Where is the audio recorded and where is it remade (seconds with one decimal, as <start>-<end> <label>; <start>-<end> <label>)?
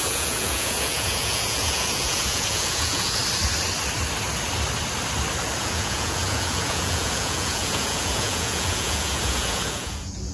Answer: 0.0-3.2 remade; 3.2-5.6 recorded; 5.6-10.3 remade